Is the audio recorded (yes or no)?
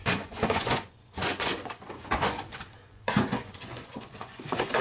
no